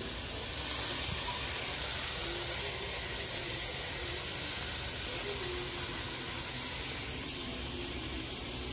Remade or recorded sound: recorded